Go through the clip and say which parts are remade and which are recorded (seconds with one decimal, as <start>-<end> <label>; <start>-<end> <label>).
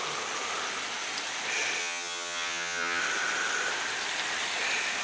0.0-1.8 recorded; 1.8-3.0 remade; 3.0-5.0 recorded